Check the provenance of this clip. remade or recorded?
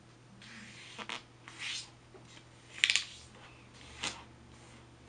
recorded